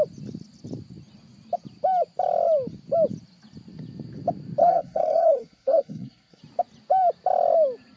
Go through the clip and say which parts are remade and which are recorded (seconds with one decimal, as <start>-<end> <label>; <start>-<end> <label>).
0.0-4.6 recorded; 4.6-6.4 remade; 6.4-8.0 recorded